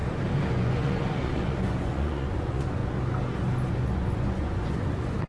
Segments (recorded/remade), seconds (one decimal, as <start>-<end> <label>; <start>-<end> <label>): 0.0-0.5 recorded; 0.5-2.8 remade; 2.8-3.7 recorded; 3.7-5.3 remade